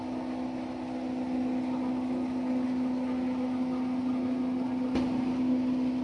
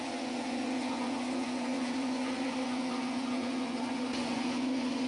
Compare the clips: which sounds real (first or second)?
first